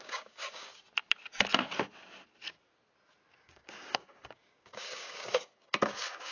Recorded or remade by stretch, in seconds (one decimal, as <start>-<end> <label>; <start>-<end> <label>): 0.0-0.7 remade; 0.7-3.3 recorded; 3.3-6.3 remade